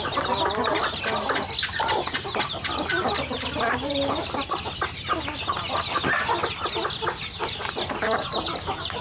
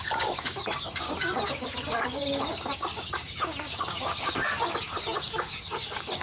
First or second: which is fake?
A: second